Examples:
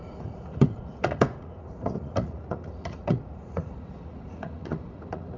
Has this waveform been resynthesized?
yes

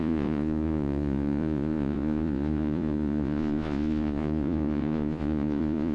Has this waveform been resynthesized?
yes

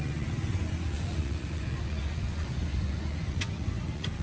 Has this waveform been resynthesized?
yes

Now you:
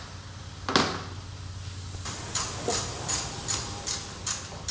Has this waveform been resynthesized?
no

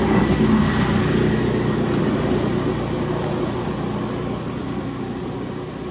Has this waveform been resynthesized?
no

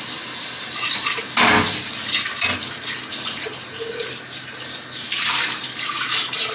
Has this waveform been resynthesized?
no